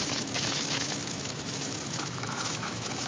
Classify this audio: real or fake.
fake